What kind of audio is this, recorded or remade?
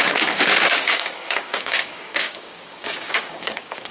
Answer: remade